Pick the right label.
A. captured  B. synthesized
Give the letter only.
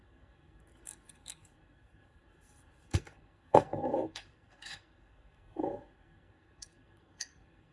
B